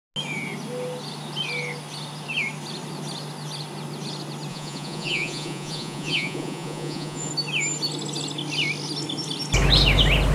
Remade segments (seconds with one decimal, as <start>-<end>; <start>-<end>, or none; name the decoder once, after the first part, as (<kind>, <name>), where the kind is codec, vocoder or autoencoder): 4.5-7.3 (vocoder, Vocos)